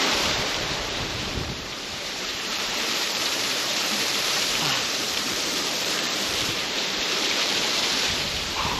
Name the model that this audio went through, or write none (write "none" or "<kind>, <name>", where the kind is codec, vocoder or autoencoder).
vocoder, BigVGAN v2